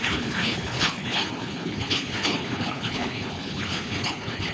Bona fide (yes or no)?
no